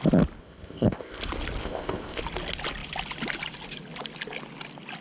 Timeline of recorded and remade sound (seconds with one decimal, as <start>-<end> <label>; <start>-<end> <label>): 0.0-0.4 recorded; 0.4-1.2 remade; 1.2-1.6 recorded; 1.6-2.2 remade; 2.2-5.0 recorded